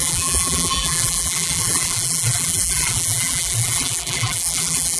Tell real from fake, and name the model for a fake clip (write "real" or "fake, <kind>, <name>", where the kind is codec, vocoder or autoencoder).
fake, vocoder, BigVGAN v2